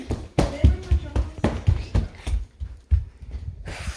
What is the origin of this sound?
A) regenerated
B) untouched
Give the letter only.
A